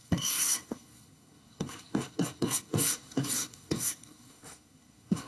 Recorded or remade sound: remade